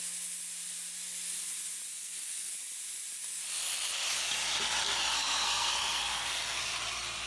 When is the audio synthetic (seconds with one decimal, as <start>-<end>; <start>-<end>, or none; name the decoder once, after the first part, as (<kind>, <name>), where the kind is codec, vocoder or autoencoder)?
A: 1.9-2.5 (codec, SNAC); 5.1-6.6